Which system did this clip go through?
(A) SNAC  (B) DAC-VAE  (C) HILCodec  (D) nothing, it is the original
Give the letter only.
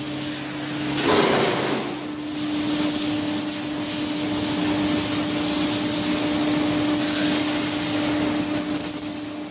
D